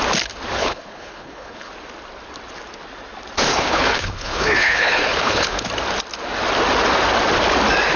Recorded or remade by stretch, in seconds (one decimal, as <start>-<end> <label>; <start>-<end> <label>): 0.0-0.6 recorded; 0.6-1.7 remade; 1.7-3.5 recorded; 3.5-5.7 remade; 5.7-8.0 recorded